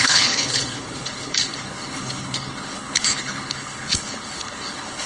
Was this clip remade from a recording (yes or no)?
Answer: yes